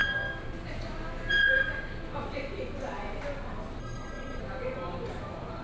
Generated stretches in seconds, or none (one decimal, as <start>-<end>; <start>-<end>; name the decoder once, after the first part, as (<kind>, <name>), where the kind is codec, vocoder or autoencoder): 3.8-4.4 (codec, SNAC)